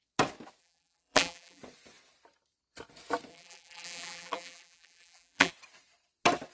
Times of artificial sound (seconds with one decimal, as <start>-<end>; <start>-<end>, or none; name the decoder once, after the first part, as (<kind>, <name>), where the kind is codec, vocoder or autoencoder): 0.6-1.6 (vocoder, BigVGAN v2); 3.3-5.5